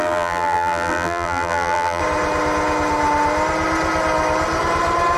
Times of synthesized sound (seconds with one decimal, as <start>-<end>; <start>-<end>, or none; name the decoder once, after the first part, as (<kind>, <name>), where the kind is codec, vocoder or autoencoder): 0.0-2.0 (vocoder, BigVGAN v2)